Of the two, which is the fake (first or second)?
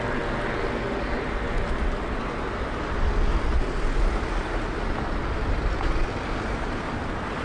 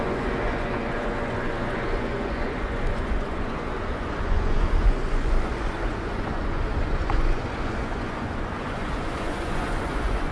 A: second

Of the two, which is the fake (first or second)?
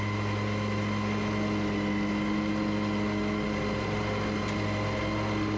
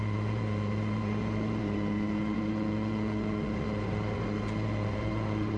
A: second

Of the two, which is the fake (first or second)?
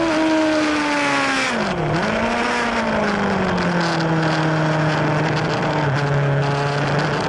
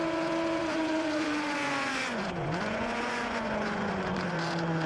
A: second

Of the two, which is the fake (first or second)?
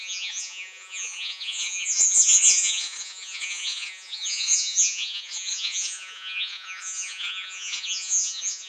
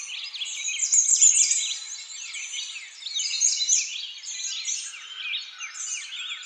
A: first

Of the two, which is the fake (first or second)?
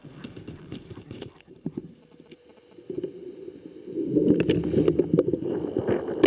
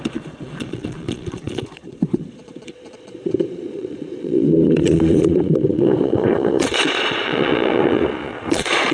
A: second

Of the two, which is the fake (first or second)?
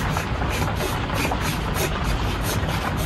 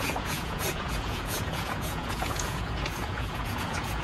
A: second